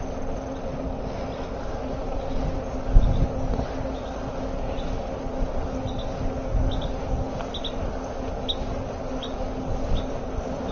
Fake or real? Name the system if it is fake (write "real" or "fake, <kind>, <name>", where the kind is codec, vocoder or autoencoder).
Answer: real